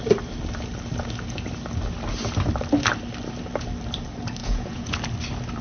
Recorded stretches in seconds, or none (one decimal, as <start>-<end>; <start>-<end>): 0.0-4.4; 5.0-5.6

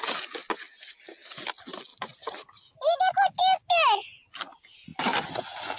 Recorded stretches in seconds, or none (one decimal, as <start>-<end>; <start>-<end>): 0.0-5.8

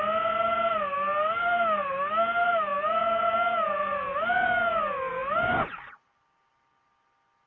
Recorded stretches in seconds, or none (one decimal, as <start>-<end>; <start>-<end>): 0.0-7.5

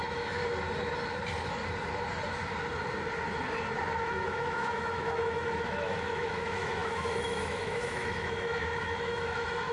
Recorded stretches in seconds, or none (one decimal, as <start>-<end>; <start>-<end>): 0.4-4.0